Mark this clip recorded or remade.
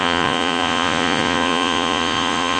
remade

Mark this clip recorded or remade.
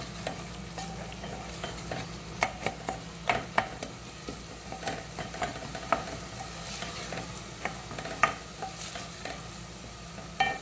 recorded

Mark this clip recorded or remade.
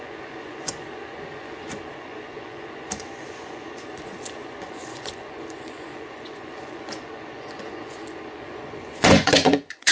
remade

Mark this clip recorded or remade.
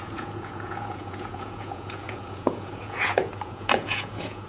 remade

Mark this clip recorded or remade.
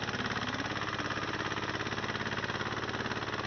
recorded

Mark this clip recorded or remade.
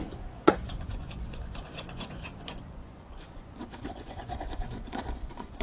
remade